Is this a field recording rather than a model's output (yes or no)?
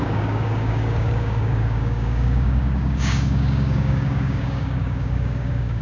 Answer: no